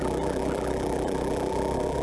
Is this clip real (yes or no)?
no